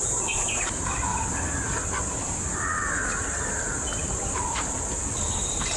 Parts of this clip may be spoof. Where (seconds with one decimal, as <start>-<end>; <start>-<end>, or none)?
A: none